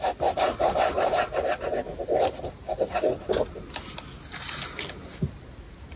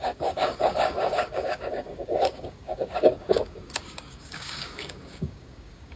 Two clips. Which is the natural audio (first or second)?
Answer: first